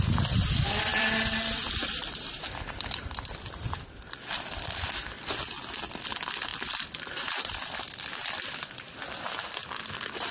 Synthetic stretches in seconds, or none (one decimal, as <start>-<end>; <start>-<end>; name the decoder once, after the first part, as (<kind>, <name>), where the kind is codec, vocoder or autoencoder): 0.9-3.4 (vocoder, BigVGAN v2); 6.5-7.8